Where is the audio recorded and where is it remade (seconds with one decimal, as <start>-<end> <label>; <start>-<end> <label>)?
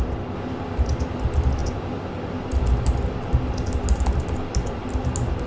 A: 0.0-5.5 recorded